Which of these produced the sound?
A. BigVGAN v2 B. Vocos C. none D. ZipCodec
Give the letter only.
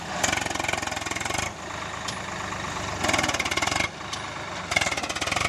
C